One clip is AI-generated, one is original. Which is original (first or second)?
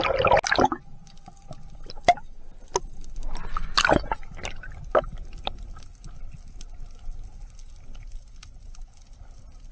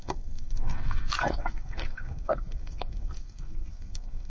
first